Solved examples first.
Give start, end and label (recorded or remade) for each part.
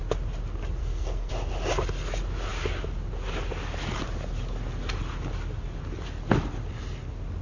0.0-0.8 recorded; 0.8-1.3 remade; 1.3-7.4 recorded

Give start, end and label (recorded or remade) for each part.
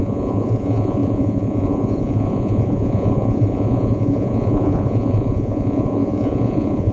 0.0-6.9 remade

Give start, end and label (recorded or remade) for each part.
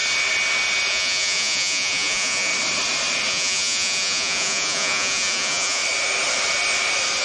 0.0-0.9 recorded; 0.9-2.5 remade; 2.5-3.3 recorded; 3.3-5.8 remade; 5.8-7.2 recorded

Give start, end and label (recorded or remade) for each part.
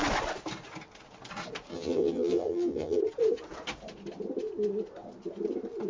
0.0-1.7 recorded; 1.7-3.0 remade; 3.0-5.9 recorded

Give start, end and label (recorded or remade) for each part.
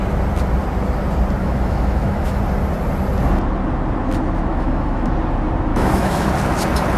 0.0-1.4 recorded; 1.4-2.4 remade; 2.4-4.5 recorded; 4.5-5.1 remade; 5.1-5.7 recorded; 5.7-6.3 remade; 6.3-7.0 recorded